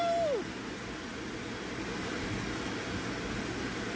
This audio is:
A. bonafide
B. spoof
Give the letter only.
A